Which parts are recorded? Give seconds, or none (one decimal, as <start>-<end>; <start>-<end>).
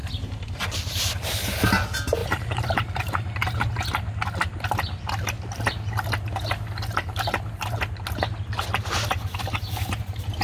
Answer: 0.6-2.2; 3.7-10.4